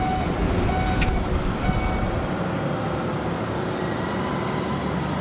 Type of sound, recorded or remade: recorded